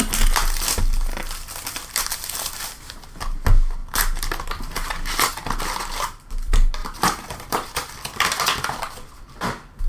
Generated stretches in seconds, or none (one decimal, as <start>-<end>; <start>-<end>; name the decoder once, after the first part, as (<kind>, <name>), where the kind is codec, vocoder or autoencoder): 6.8-7.5 (vocoder, BigVGAN v2)